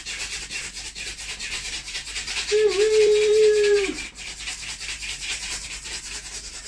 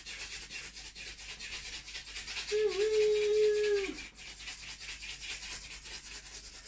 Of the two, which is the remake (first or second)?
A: first